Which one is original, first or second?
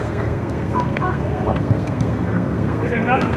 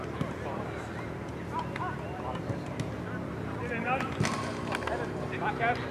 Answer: second